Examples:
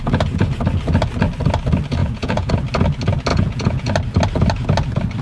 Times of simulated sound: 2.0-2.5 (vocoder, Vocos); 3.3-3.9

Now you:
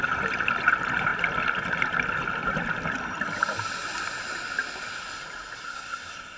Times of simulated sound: 5.6-6.4 (codec, SNAC)

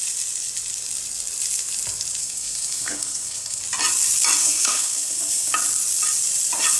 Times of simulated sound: 2.2-3.6 (codec, SNAC); 4.4-5.5

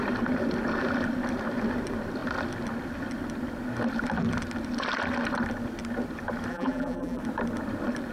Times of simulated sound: 6.5-7.2 (vocoder, BigVGAN v2)

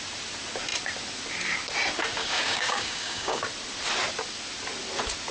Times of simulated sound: 2.2-3.4 (codec, DAC)

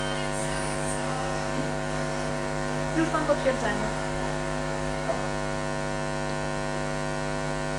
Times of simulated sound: 0.4-5.1 (codec, DAC)

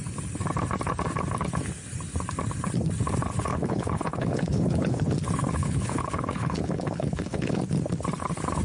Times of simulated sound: 3.5-5.0 (codec, HILCodec); 5.4-7.6

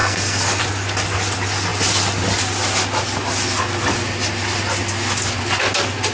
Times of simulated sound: 0.0-0.6 (codec, SNAC)